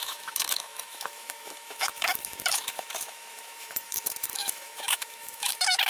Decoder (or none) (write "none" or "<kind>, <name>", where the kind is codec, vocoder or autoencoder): autoencoder, DAC-VAE